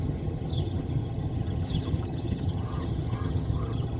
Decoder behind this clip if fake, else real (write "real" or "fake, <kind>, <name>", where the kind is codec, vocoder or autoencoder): fake, vocoder, HiFi-GAN